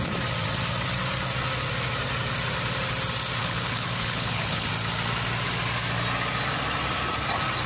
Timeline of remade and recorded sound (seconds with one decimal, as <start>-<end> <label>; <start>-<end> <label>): 0.0-3.4 recorded; 3.4-4.7 remade; 4.7-7.7 recorded

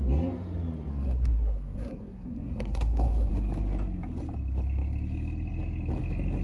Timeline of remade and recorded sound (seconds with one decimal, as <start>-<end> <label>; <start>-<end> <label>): 0.0-0.9 recorded; 0.9-3.3 remade; 3.3-6.4 recorded

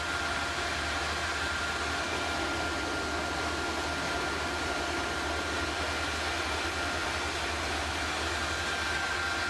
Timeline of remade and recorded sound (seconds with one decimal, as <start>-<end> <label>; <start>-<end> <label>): 0.0-9.5 recorded